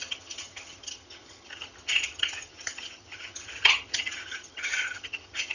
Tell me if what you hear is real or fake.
fake